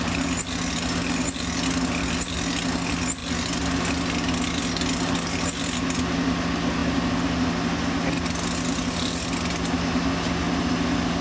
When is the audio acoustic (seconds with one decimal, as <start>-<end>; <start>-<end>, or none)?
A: 0.0-11.2